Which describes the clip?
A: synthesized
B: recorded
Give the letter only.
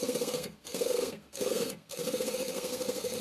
A